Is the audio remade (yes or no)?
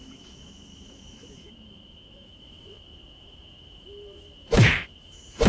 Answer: yes